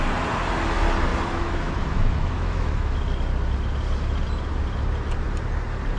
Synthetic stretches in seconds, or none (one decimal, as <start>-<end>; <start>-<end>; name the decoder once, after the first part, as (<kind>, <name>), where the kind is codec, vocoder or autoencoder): 1.1-3.0 (autoencoder, DAC-VAE)